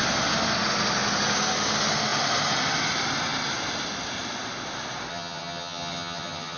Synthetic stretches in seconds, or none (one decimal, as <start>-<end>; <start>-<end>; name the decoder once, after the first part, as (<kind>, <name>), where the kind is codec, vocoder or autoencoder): 5.1-6.6 (vocoder, HiFi-GAN)